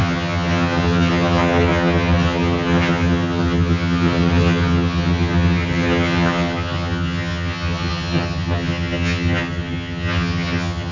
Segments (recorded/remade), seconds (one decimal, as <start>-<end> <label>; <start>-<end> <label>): 0.0-10.9 remade